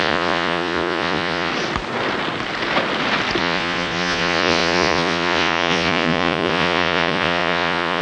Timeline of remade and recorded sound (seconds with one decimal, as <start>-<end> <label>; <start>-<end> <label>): 0.0-1.5 remade; 1.5-3.4 recorded; 3.4-8.0 remade